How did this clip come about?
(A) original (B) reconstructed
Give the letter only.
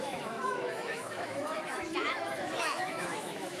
B